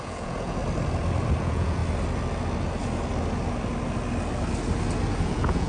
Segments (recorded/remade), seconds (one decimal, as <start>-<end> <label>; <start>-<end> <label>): 0.0-0.6 remade; 0.6-1.4 recorded; 1.4-1.8 remade; 1.8-5.2 recorded; 5.2-5.7 remade